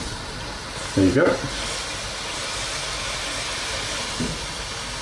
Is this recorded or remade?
recorded